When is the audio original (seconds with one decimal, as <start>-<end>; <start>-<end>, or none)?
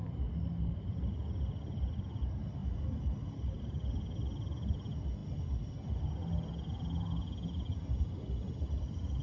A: 0.0-9.2